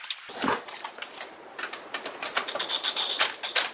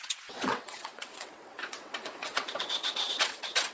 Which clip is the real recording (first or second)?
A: first